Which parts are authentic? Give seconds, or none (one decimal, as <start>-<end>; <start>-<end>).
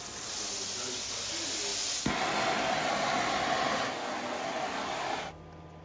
0.0-5.8